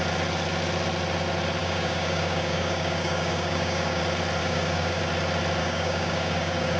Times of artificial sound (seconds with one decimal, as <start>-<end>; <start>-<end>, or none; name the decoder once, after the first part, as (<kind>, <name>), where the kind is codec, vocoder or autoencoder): 1.6-4.0 (codec, DAC); 4.4-5.0; 5.6-6.8